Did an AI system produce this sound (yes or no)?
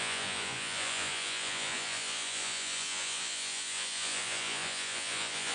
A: yes